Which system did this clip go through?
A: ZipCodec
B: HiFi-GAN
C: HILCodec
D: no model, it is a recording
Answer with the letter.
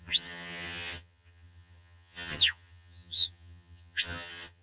B